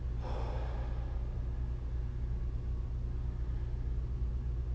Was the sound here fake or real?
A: real